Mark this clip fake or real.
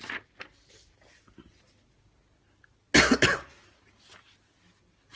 real